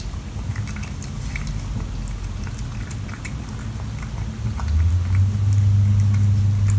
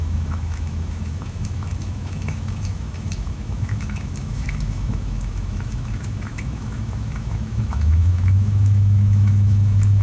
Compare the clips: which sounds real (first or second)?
first